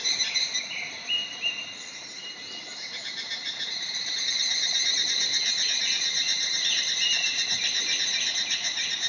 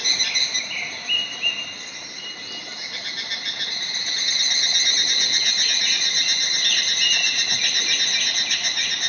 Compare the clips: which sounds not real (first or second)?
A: first